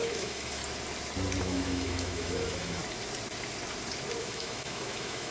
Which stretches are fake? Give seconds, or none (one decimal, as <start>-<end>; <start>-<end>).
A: 0.0-0.6; 1.4-2.8; 4.2-5.3